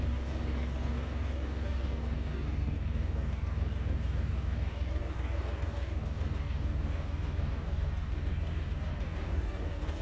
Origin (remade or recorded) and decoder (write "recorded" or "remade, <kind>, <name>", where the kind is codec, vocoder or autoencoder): remade, codec, DAC